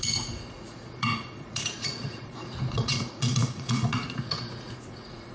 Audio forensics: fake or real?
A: fake